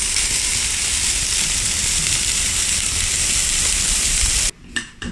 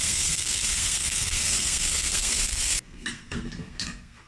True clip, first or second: first